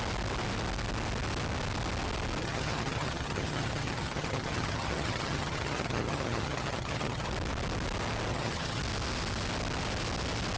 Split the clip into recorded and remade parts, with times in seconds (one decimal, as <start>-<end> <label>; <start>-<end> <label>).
0.0-2.4 recorded; 2.4-7.3 remade; 7.3-8.3 recorded; 8.3-8.8 remade; 8.8-10.6 recorded